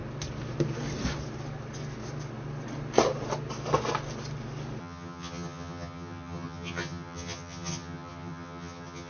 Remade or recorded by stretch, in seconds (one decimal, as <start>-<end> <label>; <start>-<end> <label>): 0.0-4.8 recorded; 4.8-9.1 remade